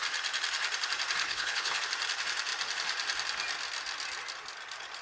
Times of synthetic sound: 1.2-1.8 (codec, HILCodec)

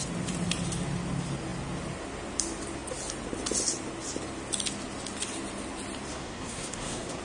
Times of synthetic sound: 6.1-7.2 (codec, SNAC)

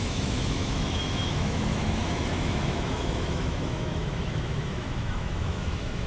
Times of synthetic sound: 0.0-6.1 (autoencoder, DAC-VAE)